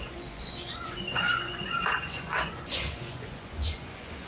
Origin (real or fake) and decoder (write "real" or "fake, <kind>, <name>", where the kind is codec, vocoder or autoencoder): fake, vocoder, Vocos